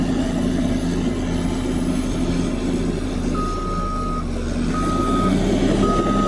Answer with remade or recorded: recorded